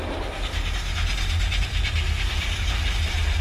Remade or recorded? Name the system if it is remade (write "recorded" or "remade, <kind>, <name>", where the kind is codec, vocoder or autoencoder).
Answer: recorded